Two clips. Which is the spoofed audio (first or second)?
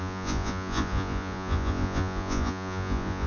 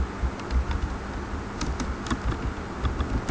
first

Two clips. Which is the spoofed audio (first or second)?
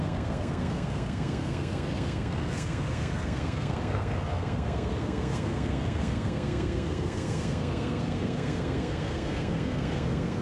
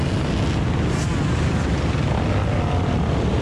first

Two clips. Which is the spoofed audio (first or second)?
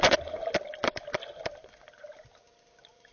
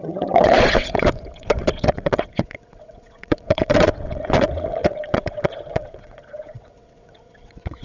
second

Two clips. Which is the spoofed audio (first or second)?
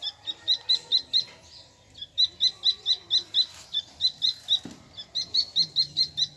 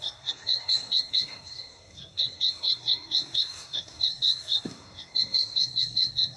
second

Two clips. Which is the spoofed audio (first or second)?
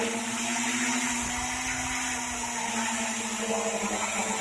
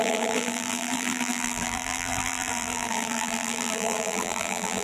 second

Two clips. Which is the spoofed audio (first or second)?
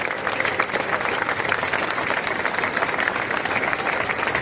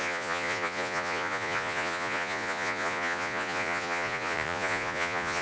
second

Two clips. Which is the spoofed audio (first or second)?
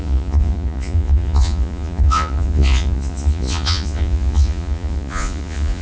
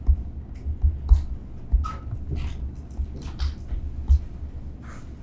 first